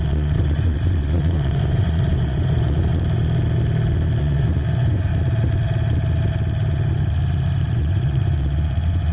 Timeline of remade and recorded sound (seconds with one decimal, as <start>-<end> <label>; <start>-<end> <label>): 0.0-2.9 remade; 2.9-4.2 recorded; 4.2-5.1 remade; 5.1-7.6 recorded; 7.6-9.1 remade